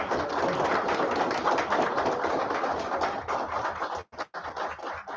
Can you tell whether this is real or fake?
real